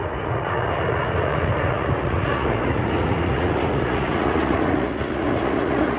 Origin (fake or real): fake